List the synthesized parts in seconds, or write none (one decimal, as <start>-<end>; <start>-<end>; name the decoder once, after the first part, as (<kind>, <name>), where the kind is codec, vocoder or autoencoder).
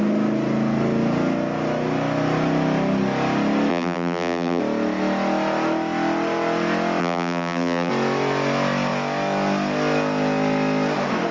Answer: 3.7-4.6 (vocoder, BigVGAN v2); 7.0-7.9